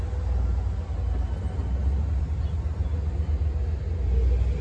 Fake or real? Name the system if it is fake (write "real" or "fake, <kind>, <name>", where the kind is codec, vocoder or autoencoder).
real